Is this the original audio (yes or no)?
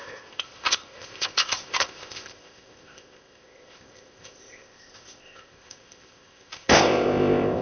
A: no